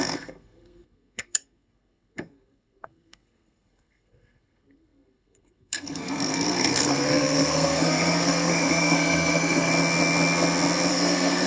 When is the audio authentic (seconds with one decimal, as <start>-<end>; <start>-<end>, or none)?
9.7-10.9